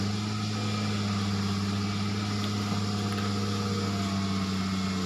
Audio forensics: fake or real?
real